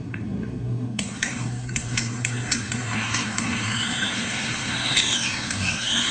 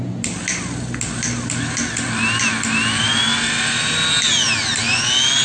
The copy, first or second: first